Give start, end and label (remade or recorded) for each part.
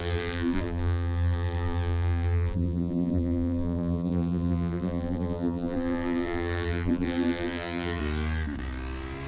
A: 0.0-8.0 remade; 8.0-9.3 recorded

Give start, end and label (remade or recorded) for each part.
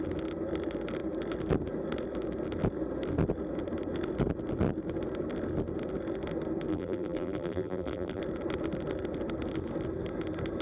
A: 0.0-6.7 recorded; 6.7-8.2 remade; 8.2-10.6 recorded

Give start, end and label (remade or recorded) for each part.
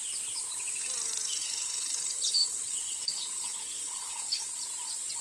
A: 0.0-1.4 recorded; 1.4-4.5 remade; 4.5-5.2 recorded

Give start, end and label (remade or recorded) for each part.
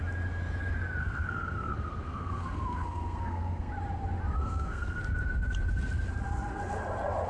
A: 0.0-1.0 recorded; 1.0-3.7 remade; 3.7-4.4 recorded; 4.4-5.0 remade; 5.0-7.3 recorded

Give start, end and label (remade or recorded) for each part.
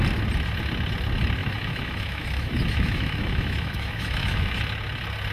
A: 0.0-1.4 recorded; 1.4-4.6 remade; 4.6-5.3 recorded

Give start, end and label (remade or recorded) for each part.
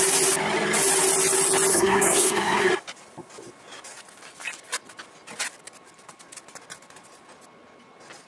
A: 0.0-1.7 recorded; 1.7-2.7 remade; 2.7-8.3 recorded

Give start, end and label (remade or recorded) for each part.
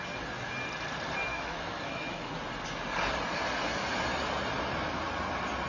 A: 0.0-1.3 recorded; 1.3-2.3 remade; 2.3-5.7 recorded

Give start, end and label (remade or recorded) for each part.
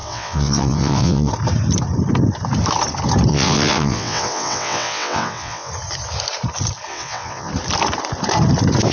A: 0.0-1.3 remade; 1.3-3.3 recorded; 3.3-5.7 remade; 5.7-6.9 recorded; 6.9-7.5 remade; 7.5-8.9 recorded